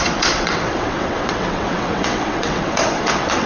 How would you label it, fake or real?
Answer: fake